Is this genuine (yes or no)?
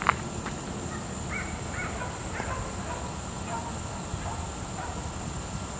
yes